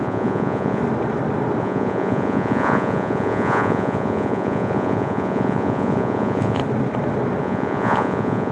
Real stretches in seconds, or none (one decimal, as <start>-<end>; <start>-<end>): 0.8-1.6; 6.6-7.4